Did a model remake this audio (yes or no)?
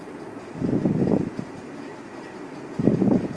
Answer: yes